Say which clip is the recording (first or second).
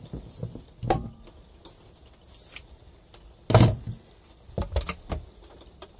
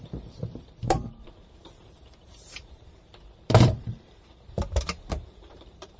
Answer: first